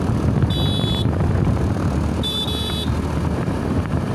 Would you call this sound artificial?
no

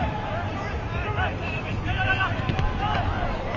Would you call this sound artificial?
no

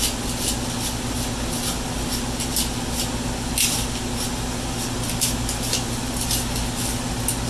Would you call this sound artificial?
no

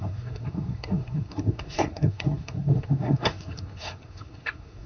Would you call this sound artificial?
yes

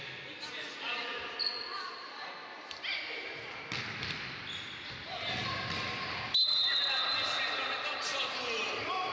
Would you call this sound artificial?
no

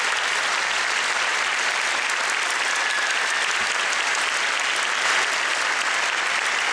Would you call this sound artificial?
no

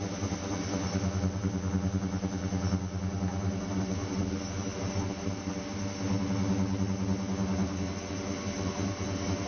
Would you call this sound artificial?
no